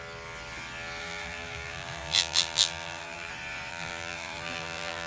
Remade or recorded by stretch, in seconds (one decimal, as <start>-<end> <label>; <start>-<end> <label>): 0.0-1.0 recorded; 1.0-3.3 remade; 3.3-3.7 recorded; 3.7-5.1 remade